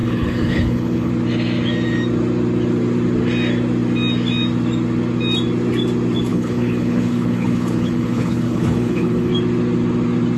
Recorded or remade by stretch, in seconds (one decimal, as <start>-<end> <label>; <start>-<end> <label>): 0.0-1.1 remade; 1.1-6.3 recorded; 6.3-9.3 remade; 9.3-10.4 recorded